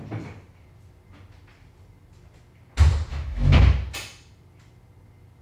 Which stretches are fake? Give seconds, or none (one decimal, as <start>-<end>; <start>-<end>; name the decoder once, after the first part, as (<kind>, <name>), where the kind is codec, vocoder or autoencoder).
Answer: 3.1-3.6 (autoencoder, DAC-VAE)